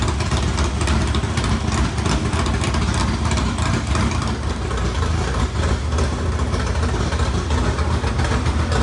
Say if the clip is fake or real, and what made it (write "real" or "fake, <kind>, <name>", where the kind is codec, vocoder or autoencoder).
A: real